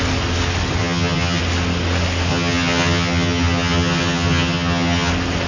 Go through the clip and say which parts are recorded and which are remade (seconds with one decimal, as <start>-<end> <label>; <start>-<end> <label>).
0.0-0.8 recorded; 0.8-1.4 remade; 1.4-2.3 recorded; 2.3-5.1 remade; 5.1-5.5 recorded